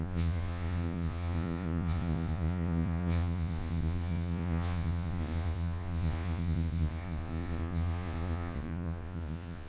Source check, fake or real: fake